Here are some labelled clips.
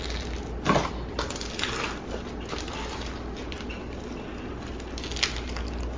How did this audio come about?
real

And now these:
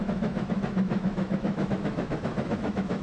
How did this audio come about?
fake